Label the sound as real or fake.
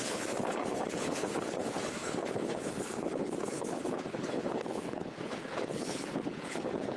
fake